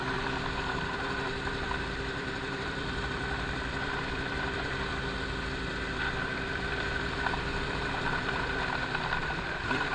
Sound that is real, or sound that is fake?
fake